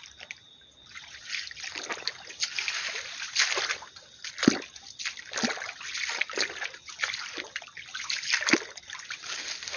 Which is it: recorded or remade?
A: recorded